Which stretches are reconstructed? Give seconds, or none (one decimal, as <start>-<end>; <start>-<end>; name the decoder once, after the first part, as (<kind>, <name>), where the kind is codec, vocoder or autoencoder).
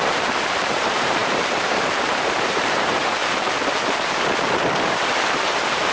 0.0-3.2 (vocoder, BigVGAN v2); 4.5-5.9